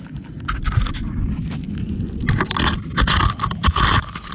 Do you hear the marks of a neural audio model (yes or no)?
no